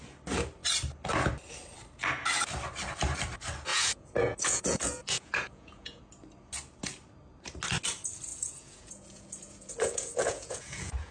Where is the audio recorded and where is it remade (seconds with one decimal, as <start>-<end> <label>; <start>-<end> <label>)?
0.0-3.7 recorded; 3.7-6.0 remade; 6.0-8.3 recorded; 8.3-11.1 remade